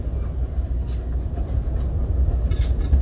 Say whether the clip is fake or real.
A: real